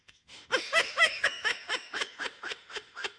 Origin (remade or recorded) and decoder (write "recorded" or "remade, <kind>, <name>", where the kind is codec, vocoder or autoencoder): remade, autoencoder, DAC-VAE